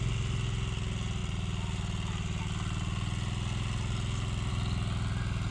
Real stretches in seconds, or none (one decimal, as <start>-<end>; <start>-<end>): 0.0-5.5